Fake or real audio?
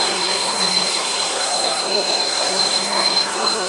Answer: fake